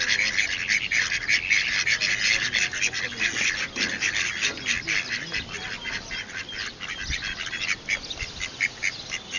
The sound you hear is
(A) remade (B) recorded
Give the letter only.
B